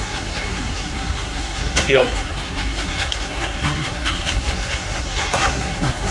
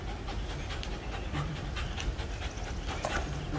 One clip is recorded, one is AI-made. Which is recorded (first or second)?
second